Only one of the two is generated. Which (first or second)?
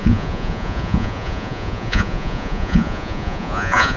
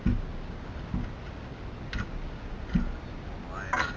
first